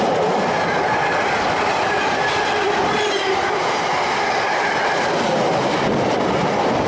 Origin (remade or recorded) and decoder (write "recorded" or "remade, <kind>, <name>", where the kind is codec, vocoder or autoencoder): recorded